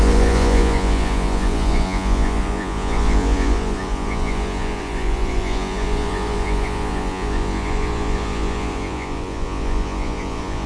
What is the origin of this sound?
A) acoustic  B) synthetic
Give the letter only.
B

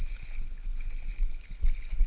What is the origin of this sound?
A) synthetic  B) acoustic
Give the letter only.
B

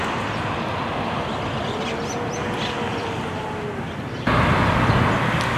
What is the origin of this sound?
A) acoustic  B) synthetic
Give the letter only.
A